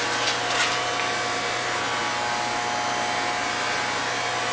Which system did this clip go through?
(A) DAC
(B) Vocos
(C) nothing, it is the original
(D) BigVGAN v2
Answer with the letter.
C